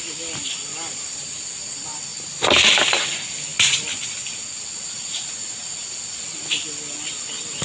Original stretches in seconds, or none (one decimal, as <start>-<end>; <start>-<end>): 0.0-7.6